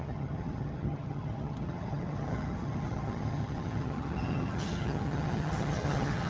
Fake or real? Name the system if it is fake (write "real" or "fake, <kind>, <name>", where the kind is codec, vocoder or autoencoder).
fake, vocoder, HiFi-GAN